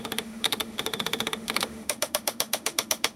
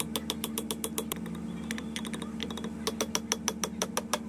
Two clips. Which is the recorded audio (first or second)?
second